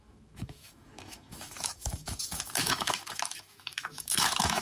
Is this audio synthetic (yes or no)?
yes